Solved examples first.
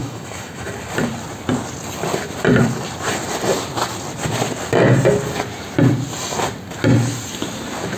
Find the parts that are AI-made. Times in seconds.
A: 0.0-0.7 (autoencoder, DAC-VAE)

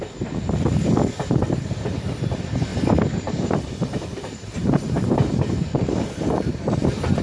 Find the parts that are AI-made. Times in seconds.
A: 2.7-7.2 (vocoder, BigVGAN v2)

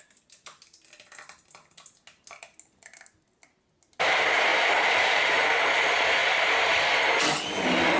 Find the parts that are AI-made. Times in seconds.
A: 4.5-5.5 (vocoder, BigVGAN v2)